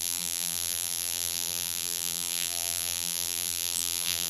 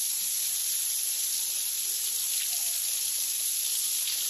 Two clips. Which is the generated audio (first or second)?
first